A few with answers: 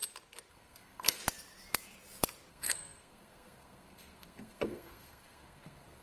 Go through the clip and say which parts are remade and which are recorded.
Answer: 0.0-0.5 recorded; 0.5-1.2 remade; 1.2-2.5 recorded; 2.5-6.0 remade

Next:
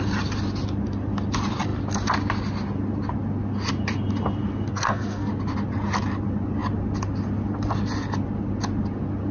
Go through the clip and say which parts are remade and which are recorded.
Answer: 0.0-4.7 recorded; 4.7-5.3 remade; 5.3-9.3 recorded

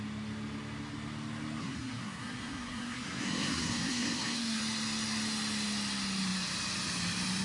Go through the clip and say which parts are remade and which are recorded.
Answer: 0.0-1.6 recorded; 1.6-4.6 remade; 4.6-7.4 recorded